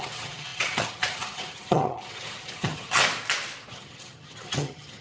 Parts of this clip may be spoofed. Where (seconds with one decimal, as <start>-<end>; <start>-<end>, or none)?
0.0-3.0; 3.7-5.0